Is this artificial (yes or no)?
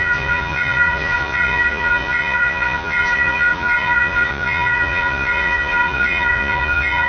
yes